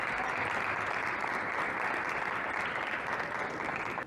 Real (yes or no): yes